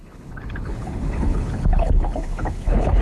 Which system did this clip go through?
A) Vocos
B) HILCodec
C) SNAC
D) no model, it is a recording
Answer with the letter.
B